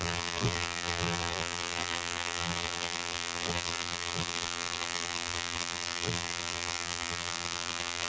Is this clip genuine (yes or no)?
no